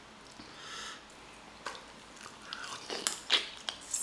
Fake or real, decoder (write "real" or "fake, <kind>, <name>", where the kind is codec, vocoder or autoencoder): real